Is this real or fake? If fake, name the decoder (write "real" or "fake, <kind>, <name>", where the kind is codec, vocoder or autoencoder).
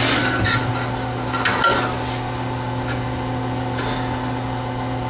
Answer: real